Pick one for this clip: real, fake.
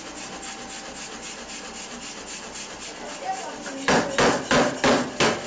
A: real